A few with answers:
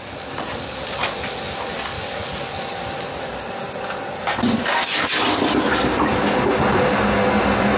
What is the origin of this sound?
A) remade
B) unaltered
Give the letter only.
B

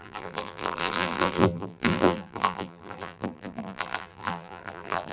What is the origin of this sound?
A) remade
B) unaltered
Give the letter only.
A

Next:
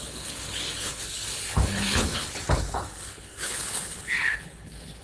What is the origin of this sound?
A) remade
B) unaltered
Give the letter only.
A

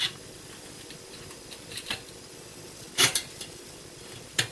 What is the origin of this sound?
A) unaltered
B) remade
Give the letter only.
B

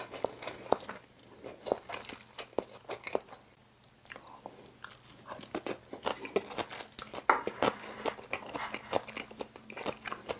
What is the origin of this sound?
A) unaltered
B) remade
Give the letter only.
A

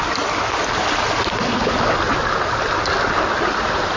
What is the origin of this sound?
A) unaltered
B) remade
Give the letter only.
A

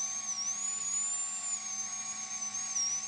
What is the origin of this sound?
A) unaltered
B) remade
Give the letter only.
A